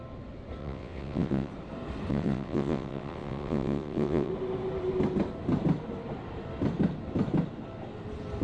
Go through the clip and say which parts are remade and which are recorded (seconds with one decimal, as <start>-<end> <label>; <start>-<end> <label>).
0.0-0.6 recorded; 0.6-1.5 remade; 1.5-2.1 recorded; 2.1-4.3 remade; 4.3-8.4 recorded